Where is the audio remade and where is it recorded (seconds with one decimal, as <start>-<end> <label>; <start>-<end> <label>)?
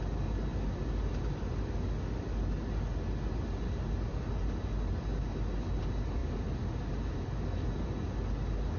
0.0-8.8 recorded